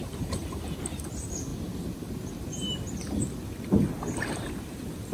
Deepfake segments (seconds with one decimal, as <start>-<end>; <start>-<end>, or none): 0.0-1.5; 4.5-5.1

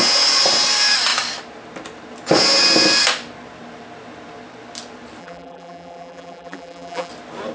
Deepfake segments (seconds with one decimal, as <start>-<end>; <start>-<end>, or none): 5.2-7.1

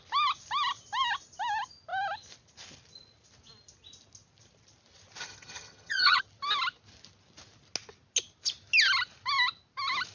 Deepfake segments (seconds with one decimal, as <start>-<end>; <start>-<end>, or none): 5.2-6.2

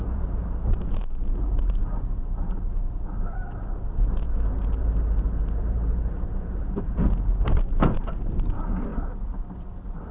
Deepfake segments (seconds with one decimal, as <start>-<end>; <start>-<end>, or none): 0.0-8.9; 9.7-10.1

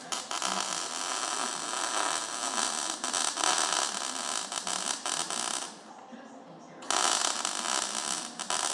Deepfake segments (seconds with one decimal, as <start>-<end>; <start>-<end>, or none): none

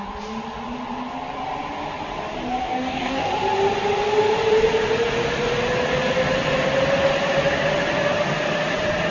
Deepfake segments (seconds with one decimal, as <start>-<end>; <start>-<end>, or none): 2.6-3.3